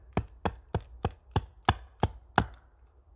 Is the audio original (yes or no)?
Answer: yes